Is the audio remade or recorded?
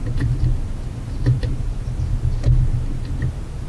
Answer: recorded